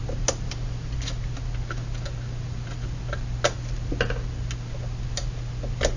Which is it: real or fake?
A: real